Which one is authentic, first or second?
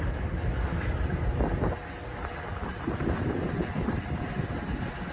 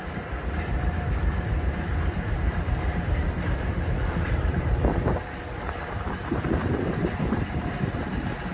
first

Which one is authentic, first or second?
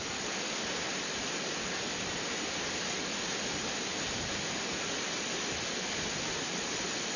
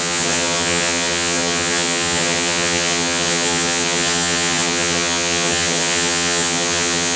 first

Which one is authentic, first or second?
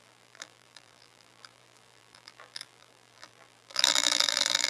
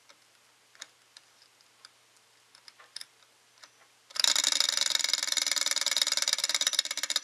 second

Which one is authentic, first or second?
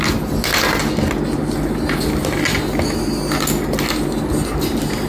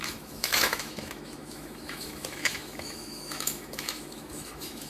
first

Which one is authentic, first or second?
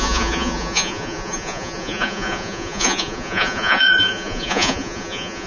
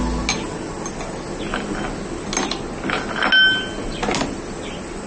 second